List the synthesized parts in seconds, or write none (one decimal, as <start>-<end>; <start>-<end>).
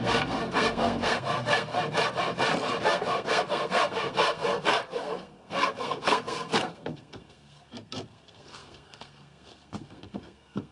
0.0-1.7; 2.8-10.7